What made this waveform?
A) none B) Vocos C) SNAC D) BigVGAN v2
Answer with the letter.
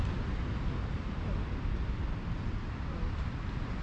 A